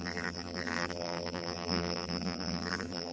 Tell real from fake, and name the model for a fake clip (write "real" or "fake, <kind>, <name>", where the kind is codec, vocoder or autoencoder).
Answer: fake, vocoder, BigVGAN v2